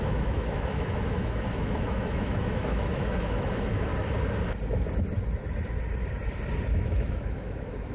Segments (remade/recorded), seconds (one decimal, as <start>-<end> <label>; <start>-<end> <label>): 0.0-3.9 remade; 3.9-6.7 recorded; 6.7-7.9 remade